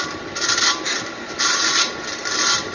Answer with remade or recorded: remade